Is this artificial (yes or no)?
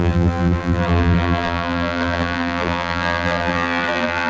yes